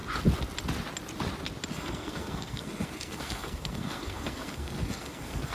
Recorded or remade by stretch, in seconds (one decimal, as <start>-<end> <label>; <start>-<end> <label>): 0.0-1.7 recorded; 1.7-5.5 remade